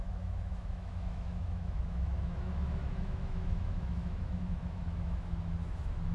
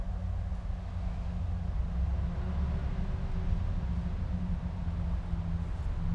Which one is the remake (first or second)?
first